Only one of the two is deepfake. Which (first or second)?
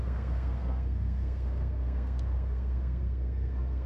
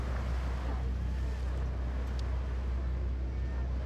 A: first